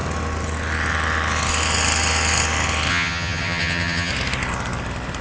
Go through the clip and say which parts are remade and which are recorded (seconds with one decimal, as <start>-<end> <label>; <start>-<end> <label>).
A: 0.0-2.9 recorded; 2.9-4.1 remade; 4.1-5.2 recorded